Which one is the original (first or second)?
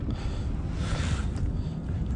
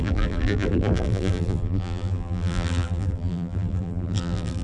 first